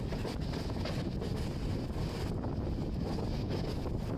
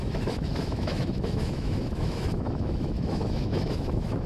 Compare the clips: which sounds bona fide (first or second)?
first